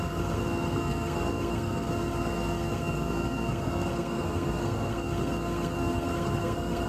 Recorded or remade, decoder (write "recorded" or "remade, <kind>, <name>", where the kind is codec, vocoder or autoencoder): remade, codec, SNAC